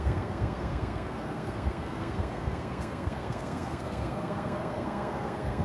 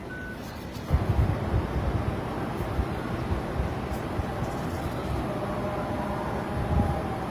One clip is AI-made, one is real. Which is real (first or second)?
second